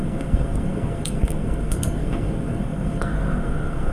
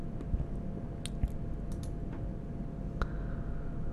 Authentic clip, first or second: second